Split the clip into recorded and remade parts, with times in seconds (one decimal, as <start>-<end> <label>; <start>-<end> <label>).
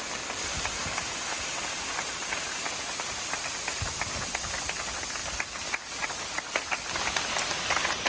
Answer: 0.0-8.1 recorded